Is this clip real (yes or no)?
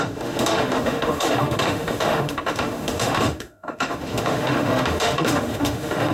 no